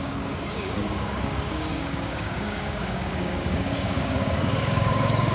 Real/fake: fake